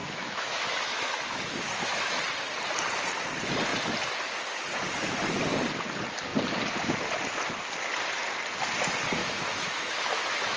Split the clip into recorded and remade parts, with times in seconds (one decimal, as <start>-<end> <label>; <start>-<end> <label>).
0.0-2.2 remade; 2.2-9.2 recorded; 9.2-10.6 remade

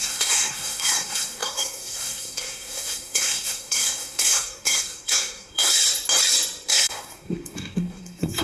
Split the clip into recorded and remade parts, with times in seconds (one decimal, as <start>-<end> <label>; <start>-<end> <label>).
0.0-5.8 remade; 5.8-6.7 recorded; 6.7-8.4 remade

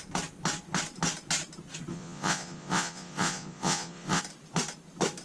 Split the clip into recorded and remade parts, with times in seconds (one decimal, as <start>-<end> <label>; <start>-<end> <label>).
0.0-1.9 recorded; 1.9-4.2 remade; 4.2-5.2 recorded

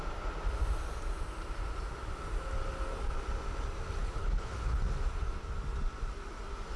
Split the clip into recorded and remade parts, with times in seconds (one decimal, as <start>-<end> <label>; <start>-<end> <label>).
0.0-4.0 recorded; 4.0-4.8 remade; 4.8-6.8 recorded

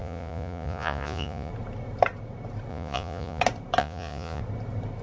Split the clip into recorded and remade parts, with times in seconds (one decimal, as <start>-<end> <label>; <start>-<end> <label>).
0.0-1.5 remade; 1.5-2.7 recorded; 2.7-3.4 remade; 3.4-3.8 recorded; 3.8-4.4 remade; 4.4-5.0 recorded

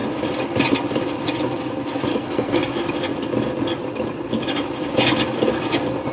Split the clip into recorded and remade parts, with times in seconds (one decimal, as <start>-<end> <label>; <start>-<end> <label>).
0.0-2.1 recorded; 2.1-2.7 remade; 2.7-6.1 recorded